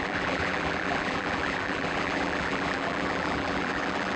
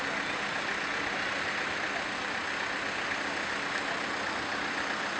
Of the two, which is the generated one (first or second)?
first